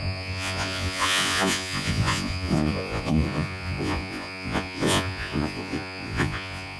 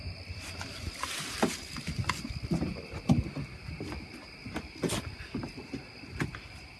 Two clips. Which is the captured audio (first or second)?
second